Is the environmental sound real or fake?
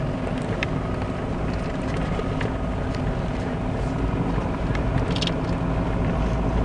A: real